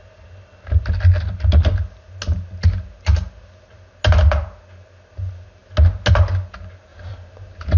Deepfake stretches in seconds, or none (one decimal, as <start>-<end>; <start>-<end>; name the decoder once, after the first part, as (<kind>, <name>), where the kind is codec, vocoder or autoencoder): 6.9-7.8 (vocoder, BigVGAN v2)

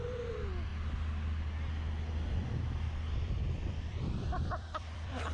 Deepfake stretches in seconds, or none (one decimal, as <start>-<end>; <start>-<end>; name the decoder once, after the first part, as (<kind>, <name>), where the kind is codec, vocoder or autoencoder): 0.0-0.7 (vocoder, BigVGAN v2); 3.9-5.3

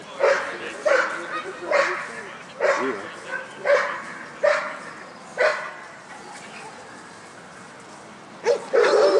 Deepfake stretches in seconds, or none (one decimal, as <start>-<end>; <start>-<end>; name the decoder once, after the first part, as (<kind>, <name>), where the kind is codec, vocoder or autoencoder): 1.4-2.6 (vocoder, BigVGAN v2); 5.5-6.1